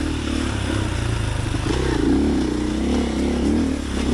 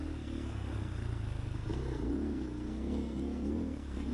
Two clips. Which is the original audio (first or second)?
first